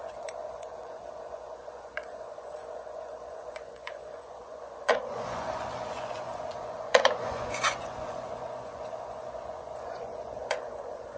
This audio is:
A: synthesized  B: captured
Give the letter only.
A